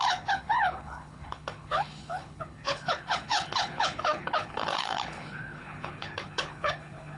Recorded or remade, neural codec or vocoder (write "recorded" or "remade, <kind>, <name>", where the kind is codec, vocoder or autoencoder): remade, codec, HILCodec